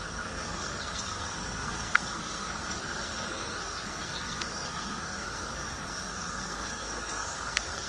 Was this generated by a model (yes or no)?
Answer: yes